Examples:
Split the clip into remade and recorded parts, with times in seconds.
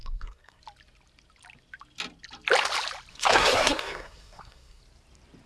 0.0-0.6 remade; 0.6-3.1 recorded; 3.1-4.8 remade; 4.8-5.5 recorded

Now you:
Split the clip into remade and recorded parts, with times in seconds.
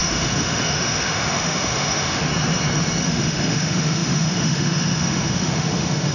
0.0-2.3 remade; 2.3-3.0 recorded; 3.0-6.1 remade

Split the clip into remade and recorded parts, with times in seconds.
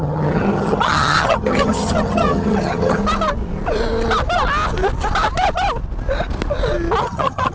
0.0-3.0 remade; 3.0-7.0 recorded; 7.0-7.5 remade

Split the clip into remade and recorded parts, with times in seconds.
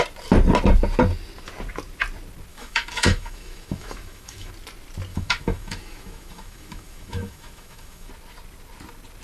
0.0-2.5 recorded; 2.5-4.5 remade; 4.5-5.1 recorded; 5.1-8.1 remade; 8.1-9.2 recorded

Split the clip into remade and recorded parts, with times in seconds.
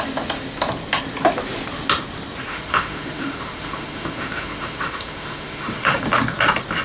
0.0-2.5 recorded; 2.5-6.0 remade; 6.0-6.8 recorded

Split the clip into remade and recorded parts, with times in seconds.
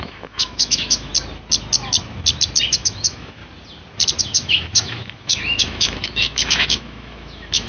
0.0-1.1 remade; 1.1-2.7 recorded; 2.7-3.4 remade; 3.4-4.2 recorded; 4.2-7.7 remade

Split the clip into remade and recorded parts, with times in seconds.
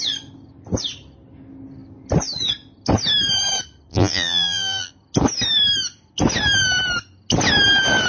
0.0-3.9 recorded; 3.9-4.9 remade; 4.9-8.1 recorded